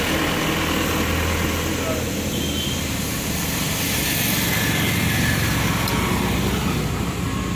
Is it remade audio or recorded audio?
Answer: recorded